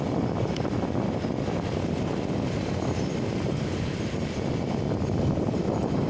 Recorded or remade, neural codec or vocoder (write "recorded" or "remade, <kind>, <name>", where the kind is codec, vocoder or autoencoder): recorded